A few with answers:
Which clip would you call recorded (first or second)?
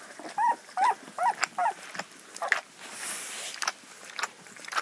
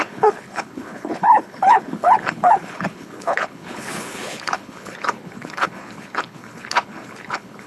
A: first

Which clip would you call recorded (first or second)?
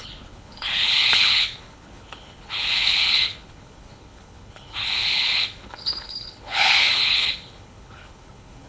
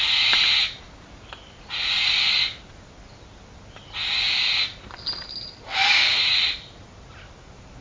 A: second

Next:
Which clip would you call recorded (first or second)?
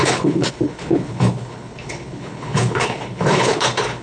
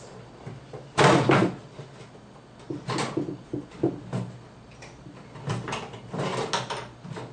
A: second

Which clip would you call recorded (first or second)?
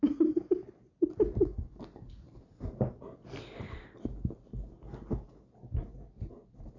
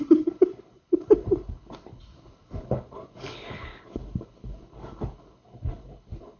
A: first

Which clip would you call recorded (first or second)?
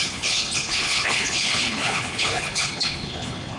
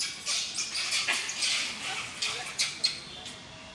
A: second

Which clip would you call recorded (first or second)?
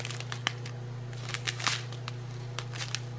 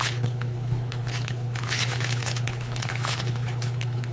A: first